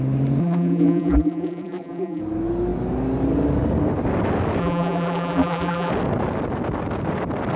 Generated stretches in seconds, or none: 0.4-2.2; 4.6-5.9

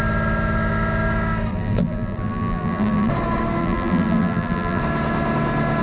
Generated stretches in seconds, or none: 1.5-3.1; 3.6-4.8

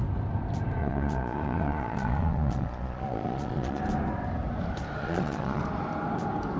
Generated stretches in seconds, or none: 0.8-3.8; 5.0-5.6

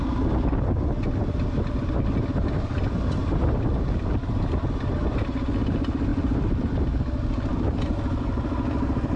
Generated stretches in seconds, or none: none

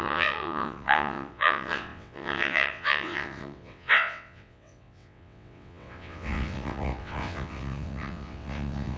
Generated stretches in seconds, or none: 0.0-9.0

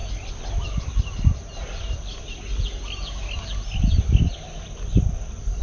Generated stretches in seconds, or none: none